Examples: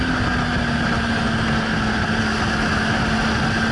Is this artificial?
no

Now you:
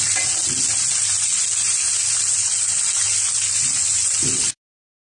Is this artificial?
no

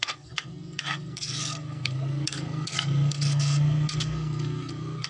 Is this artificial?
yes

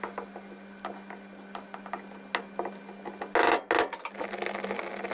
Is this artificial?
no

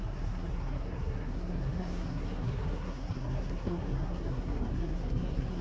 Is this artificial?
yes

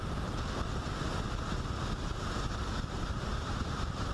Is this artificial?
no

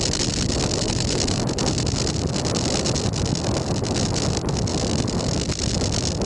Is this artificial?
no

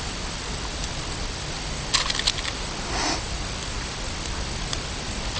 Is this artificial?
no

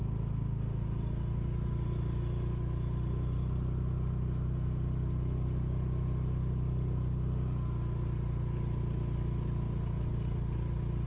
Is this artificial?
no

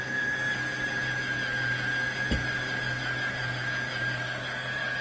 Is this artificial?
no